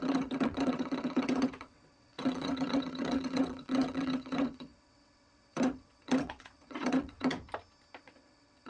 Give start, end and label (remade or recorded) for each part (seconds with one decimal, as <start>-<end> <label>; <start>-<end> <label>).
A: 0.0-7.3 remade; 7.3-8.0 recorded; 8.0-8.7 remade